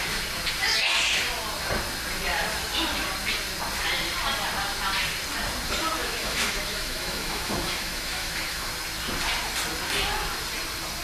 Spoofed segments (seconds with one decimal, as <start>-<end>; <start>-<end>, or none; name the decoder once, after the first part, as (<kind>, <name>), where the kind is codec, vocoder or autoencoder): 6.0-8.7 (autoencoder, DAC-VAE)